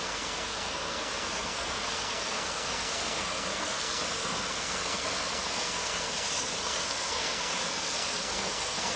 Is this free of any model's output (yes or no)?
no